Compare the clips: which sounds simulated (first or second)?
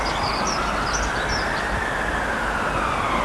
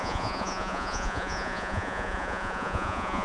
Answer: second